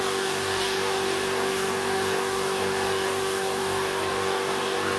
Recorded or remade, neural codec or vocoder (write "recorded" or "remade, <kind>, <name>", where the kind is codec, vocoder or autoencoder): remade, codec, DAC